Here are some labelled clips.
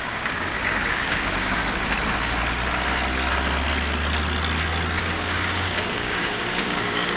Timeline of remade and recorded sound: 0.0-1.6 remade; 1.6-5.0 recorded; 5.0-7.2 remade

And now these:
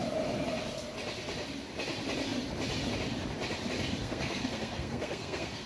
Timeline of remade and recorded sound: 0.0-4.0 recorded; 4.0-5.7 remade

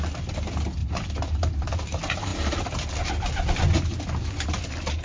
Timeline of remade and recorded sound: 0.0-0.8 recorded; 0.8-1.6 remade; 1.6-5.0 recorded

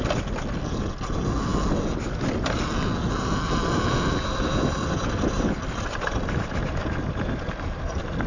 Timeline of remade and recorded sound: 0.0-8.3 recorded

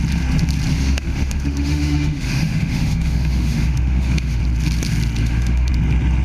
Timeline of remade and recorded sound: 0.0-0.7 recorded; 0.7-4.4 remade; 4.4-5.2 recorded; 5.2-5.7 remade; 5.7-6.2 recorded

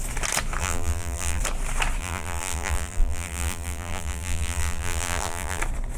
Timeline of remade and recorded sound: 0.0-0.6 recorded; 0.6-1.4 remade; 1.4-2.0 recorded; 2.0-5.6 remade; 5.6-6.0 recorded

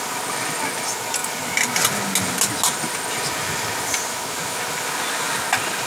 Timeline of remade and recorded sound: 0.0-5.9 recorded

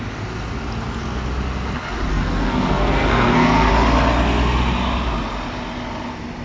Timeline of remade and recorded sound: 0.0-2.1 recorded; 2.1-3.7 remade; 3.7-6.4 recorded